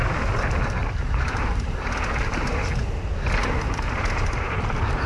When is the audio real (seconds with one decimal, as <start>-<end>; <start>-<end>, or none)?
0.0-0.8; 2.8-3.4